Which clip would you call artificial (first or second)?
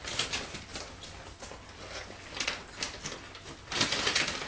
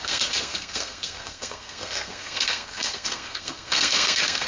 second